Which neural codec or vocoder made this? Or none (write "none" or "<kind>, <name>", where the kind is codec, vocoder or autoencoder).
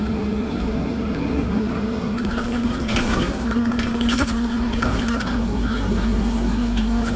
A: codec, SNAC